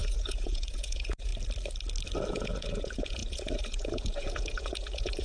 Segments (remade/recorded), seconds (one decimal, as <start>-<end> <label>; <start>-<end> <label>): 0.0-1.3 remade; 1.3-2.3 recorded; 2.3-5.2 remade